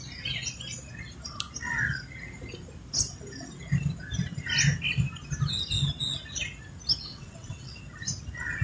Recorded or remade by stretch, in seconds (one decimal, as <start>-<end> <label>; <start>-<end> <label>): 0.0-7.1 recorded; 7.1-7.8 remade; 7.8-8.6 recorded